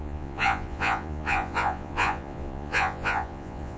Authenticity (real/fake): fake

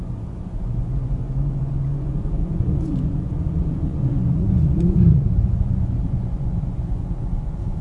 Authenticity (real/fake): fake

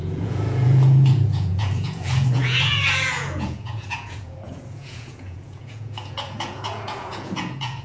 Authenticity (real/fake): fake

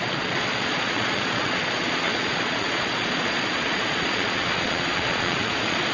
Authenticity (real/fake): fake